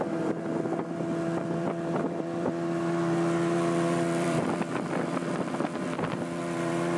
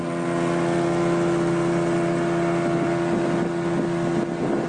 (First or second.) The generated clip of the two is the first